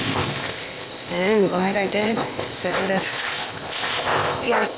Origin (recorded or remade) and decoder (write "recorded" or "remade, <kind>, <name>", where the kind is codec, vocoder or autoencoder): remade, codec, ZipCodec